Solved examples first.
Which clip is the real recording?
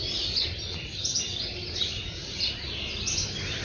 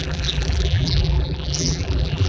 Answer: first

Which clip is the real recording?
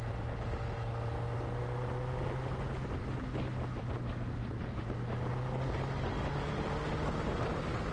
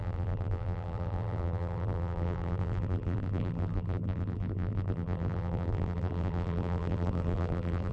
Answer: first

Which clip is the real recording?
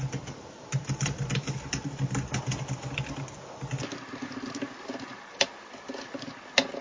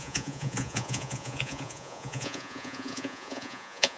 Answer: first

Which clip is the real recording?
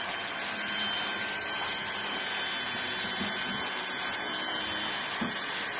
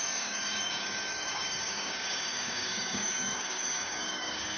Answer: first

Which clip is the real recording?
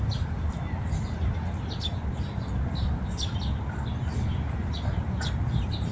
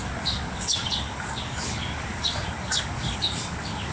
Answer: first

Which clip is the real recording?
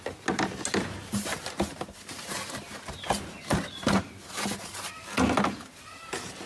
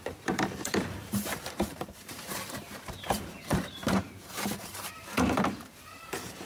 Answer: first